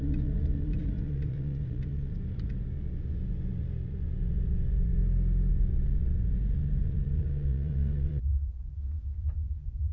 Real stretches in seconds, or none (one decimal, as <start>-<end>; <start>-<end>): 5.0-5.5